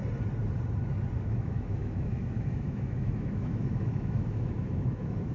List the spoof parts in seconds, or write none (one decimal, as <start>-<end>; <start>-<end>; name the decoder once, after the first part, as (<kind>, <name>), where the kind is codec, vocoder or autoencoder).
1.2-5.3 (autoencoder, DAC-VAE)